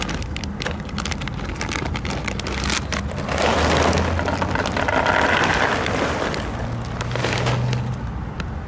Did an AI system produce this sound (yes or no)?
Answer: no